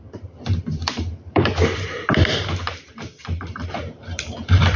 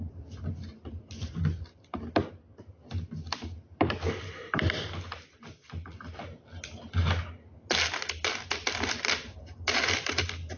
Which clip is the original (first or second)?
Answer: second